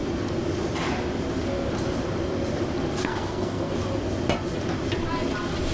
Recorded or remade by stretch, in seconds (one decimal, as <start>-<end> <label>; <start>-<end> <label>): 0.0-3.0 recorded; 3.0-3.7 remade; 3.7-5.7 recorded